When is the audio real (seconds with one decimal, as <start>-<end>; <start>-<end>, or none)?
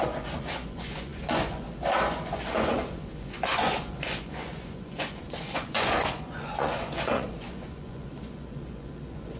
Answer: none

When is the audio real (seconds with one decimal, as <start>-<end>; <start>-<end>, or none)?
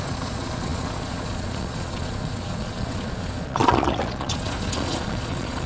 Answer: none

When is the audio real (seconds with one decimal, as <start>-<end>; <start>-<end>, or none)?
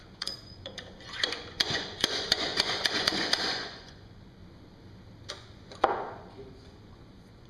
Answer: 4.4-5.3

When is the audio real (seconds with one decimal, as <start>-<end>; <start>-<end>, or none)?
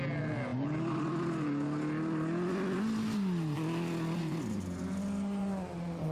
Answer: 0.0-6.1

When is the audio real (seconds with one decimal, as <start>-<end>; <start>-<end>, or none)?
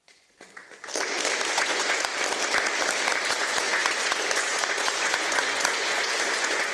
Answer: 0.9-1.5; 2.1-3.3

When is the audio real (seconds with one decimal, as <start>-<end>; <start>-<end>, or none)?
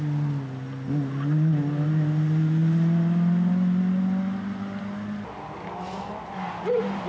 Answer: 0.0-7.1